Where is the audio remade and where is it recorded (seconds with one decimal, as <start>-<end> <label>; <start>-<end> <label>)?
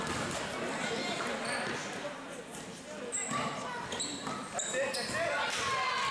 0.0-6.1 recorded